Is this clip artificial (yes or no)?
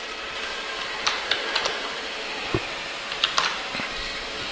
no